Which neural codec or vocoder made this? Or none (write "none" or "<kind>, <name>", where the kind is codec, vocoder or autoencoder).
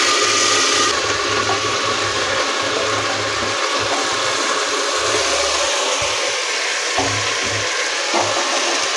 none